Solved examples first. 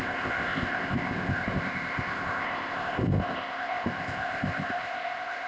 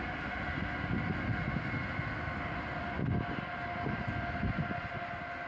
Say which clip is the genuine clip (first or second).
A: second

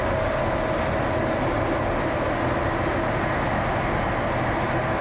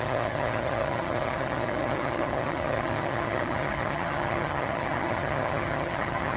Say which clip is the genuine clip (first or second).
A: first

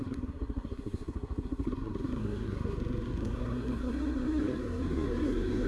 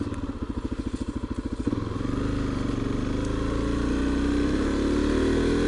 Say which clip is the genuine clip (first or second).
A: second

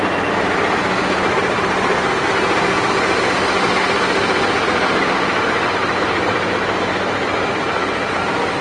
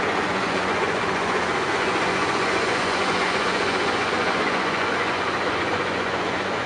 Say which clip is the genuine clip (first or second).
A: first